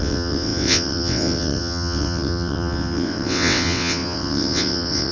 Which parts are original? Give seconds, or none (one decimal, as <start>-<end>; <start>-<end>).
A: none